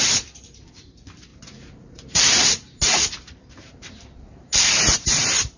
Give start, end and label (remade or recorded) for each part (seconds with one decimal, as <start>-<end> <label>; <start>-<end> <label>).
0.0-5.6 remade